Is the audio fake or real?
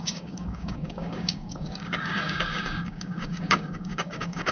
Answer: fake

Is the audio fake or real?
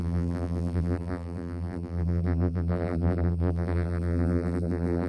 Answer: fake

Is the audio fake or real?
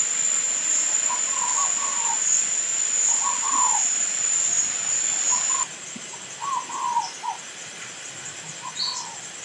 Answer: real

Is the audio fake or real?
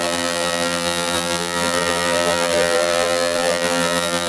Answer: fake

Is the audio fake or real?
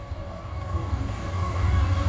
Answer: fake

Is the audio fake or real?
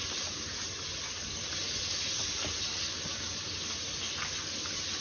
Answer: real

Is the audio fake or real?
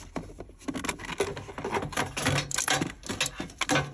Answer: real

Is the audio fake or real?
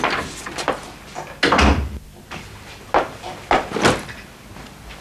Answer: real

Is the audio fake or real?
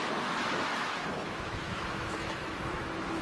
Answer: fake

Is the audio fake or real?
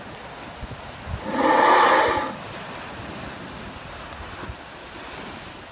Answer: real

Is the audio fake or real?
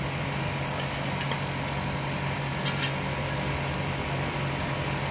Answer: real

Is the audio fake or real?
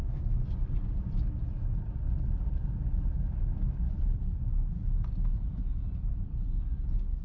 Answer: real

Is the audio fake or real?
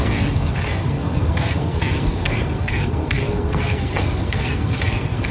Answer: fake